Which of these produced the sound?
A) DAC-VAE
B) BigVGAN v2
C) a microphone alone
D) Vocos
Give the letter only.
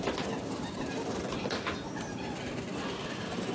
C